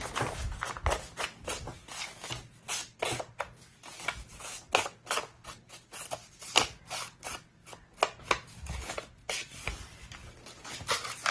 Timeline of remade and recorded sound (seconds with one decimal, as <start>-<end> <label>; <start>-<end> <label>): 0.0-11.3 recorded